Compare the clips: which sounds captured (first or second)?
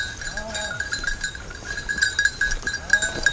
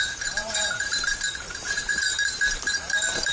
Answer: first